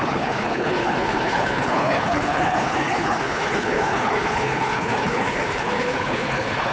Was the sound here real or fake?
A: fake